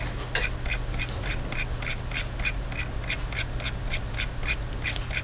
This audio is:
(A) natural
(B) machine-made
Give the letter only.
A